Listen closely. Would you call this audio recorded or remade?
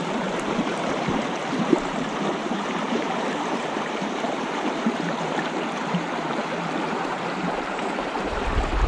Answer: remade